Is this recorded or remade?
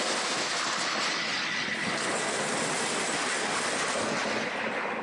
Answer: recorded